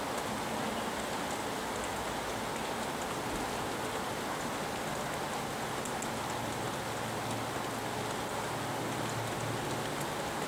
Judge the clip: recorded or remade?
recorded